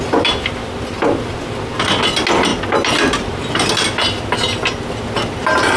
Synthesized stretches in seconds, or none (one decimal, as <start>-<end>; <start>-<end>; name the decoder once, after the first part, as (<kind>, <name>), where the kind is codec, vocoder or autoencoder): none